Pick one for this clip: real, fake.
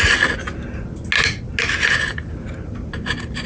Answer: real